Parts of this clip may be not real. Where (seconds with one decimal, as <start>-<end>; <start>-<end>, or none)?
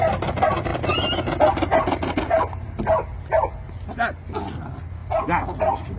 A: none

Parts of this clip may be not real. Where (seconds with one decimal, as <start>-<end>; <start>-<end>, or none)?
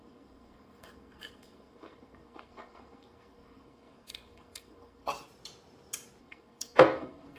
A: 0.0-5.1; 6.2-7.4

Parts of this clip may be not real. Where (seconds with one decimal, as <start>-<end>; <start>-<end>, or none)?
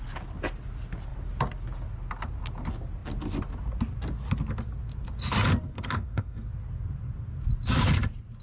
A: 5.7-6.5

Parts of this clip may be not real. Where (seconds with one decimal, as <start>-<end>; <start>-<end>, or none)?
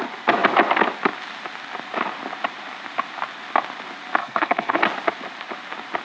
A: 4.2-4.8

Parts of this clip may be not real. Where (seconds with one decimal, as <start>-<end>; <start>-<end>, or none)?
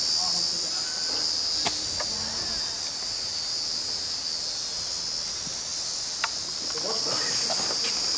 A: none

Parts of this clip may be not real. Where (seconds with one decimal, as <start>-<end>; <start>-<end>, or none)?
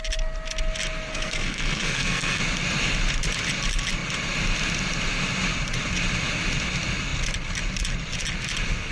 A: 1.1-2.4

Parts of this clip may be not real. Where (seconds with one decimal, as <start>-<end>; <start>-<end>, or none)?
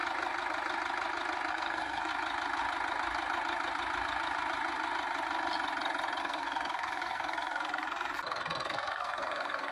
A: 1.5-2.1; 6.2-9.7